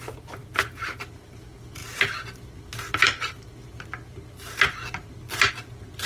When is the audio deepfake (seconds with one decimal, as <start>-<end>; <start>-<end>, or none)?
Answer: none

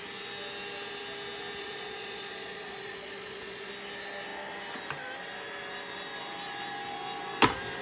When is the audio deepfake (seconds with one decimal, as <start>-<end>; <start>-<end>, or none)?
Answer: 1.6-3.7